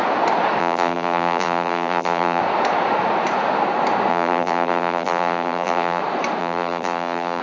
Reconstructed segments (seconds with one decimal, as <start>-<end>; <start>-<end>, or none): 0.6-2.4; 4.1-6.0; 6.4-7.4